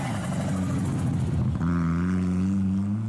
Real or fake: real